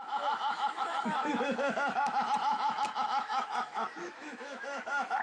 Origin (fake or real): fake